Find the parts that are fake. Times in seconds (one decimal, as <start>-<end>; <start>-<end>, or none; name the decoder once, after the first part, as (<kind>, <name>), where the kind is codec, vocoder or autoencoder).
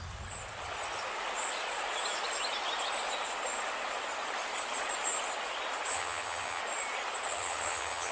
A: 5.9-6.6 (vocoder, HiFi-GAN); 7.3-8.1